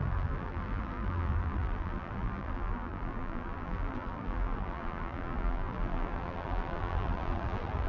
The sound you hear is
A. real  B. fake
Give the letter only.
B